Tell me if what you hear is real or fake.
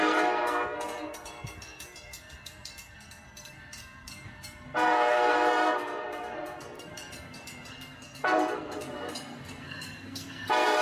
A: fake